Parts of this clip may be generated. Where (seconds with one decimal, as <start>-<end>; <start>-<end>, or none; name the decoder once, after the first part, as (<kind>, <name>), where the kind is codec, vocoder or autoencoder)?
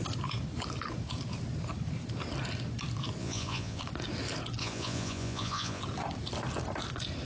3.2-3.8 (vocoder, Vocos); 4.6-5.8